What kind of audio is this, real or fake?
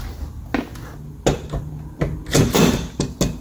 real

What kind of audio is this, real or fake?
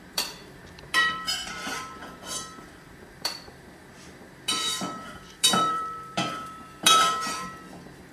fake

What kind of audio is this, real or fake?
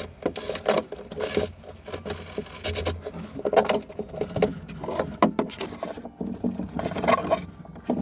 real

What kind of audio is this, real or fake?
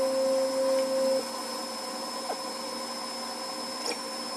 real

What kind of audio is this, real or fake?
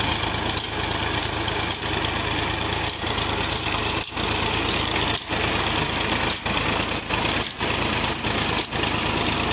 real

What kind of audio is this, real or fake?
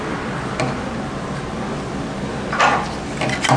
real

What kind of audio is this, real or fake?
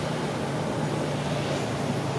real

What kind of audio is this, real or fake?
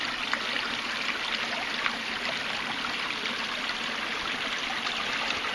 real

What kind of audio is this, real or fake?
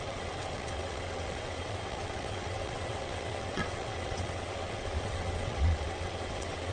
fake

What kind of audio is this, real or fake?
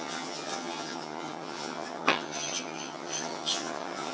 fake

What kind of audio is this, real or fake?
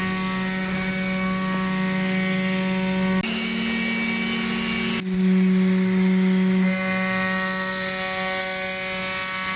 real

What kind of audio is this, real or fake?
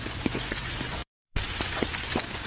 fake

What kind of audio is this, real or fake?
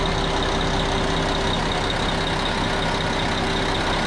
real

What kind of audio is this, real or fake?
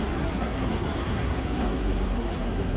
fake